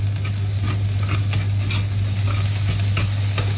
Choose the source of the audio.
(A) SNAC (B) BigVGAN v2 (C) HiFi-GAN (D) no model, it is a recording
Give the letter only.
D